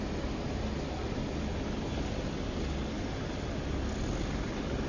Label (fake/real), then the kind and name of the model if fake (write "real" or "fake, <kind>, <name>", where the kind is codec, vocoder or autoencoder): real